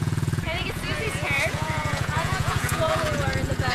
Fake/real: fake